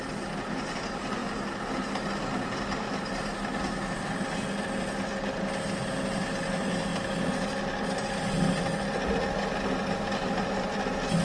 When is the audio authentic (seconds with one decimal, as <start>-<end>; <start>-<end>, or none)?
0.0-11.2